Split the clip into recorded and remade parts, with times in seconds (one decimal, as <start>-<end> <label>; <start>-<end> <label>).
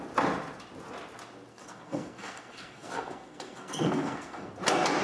0.0-1.5 recorded; 1.5-4.5 remade; 4.5-5.0 recorded